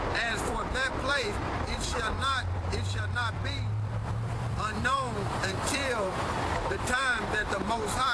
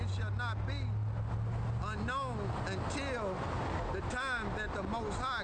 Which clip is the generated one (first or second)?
first